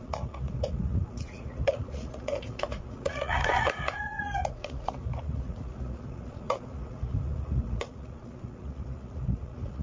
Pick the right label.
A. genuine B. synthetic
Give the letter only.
B